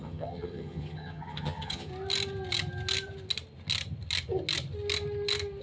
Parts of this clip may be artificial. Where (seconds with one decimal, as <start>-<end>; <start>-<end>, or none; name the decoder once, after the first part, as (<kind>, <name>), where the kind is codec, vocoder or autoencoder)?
0.0-1.9 (vocoder, HiFi-GAN)